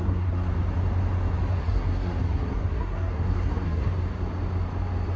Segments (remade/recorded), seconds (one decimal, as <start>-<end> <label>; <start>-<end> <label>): 0.0-0.5 remade; 0.5-1.5 recorded; 1.5-3.9 remade; 3.9-5.2 recorded